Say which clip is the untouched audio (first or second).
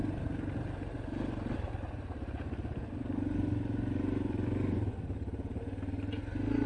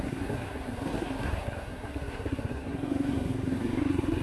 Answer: first